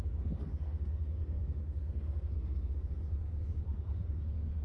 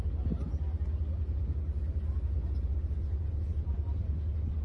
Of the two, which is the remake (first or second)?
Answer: first